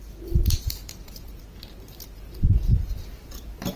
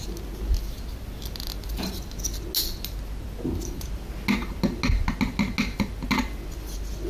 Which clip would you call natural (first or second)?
second